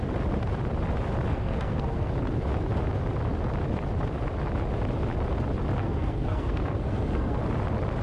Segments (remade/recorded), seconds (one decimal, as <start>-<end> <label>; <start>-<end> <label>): 0.0-1.3 recorded; 1.3-2.1 remade; 2.1-5.8 recorded; 5.8-7.4 remade; 7.4-8.0 recorded